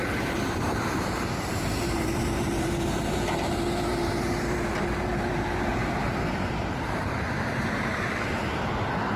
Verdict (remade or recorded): remade